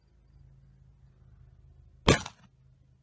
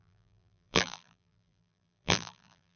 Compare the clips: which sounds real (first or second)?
first